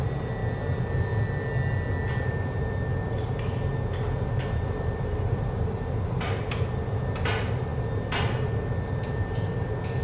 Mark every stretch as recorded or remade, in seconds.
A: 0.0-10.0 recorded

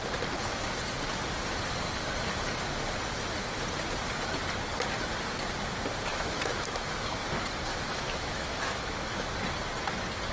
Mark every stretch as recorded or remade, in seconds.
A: 0.0-6.1 recorded; 6.1-7.3 remade; 7.3-7.7 recorded; 7.7-9.3 remade; 9.3-10.3 recorded

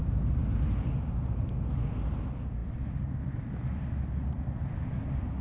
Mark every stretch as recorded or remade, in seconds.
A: 0.0-5.4 recorded

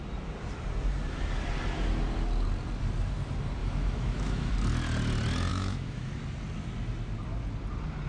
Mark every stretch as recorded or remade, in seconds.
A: 0.0-3.6 recorded; 3.6-4.5 remade; 4.5-5.5 recorded; 5.5-6.1 remade; 6.1-8.1 recorded